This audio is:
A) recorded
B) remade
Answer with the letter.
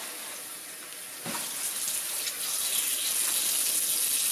A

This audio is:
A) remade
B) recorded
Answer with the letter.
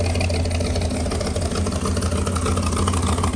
B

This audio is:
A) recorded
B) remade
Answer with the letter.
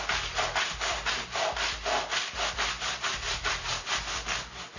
A